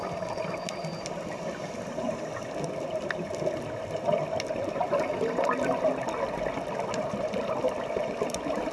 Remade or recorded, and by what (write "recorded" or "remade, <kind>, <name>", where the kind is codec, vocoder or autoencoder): recorded